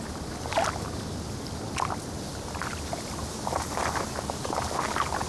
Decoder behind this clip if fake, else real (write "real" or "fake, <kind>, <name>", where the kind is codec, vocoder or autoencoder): real